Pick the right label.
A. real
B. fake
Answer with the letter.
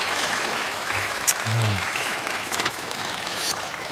B